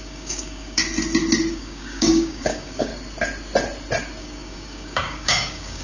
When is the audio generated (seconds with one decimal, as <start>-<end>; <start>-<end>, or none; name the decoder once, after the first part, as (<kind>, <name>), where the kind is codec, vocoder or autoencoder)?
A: 0.0-0.8 (codec, DAC); 1.5-2.9; 4.2-5.8